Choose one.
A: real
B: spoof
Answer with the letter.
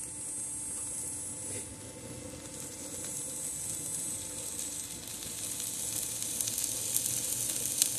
A